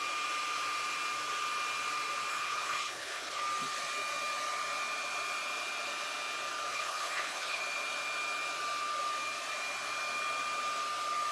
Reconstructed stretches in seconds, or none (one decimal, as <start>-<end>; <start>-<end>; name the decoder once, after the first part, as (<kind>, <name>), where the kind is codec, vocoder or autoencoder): 2.3-3.4 (codec, HILCodec); 6.7-7.6